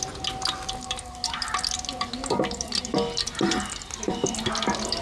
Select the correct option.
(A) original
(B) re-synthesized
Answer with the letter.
A